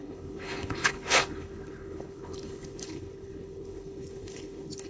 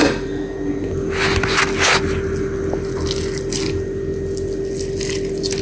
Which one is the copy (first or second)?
first